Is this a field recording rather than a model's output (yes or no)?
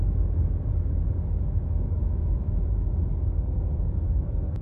no